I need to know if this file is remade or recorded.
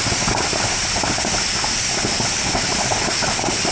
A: recorded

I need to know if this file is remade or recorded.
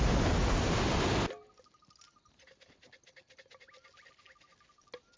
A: recorded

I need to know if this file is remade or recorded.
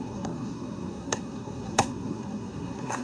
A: remade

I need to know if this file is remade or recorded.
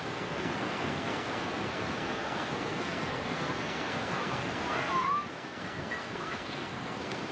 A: remade